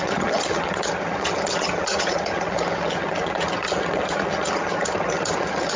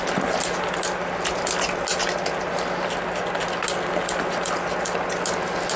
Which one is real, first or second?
second